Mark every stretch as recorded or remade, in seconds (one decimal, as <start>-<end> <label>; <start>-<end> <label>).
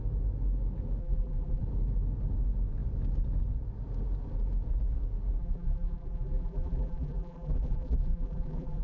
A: 0.0-1.0 recorded; 1.0-1.6 remade; 1.6-5.4 recorded; 5.4-8.8 remade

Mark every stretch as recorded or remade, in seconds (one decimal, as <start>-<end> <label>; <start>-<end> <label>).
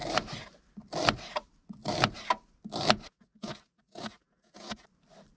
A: 0.0-0.6 remade; 0.6-1.8 recorded; 1.8-2.4 remade; 2.4-5.4 recorded